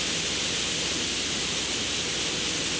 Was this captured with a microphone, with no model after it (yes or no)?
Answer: yes